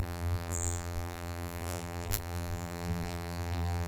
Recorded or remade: remade